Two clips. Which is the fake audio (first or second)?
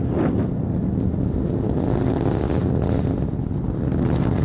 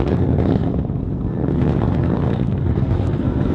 second